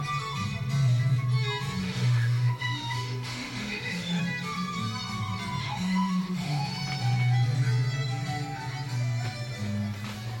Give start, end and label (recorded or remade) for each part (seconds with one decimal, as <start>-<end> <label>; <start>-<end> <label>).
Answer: 0.0-1.8 recorded; 1.8-4.2 remade; 4.2-5.6 recorded; 5.6-6.6 remade; 6.6-10.4 recorded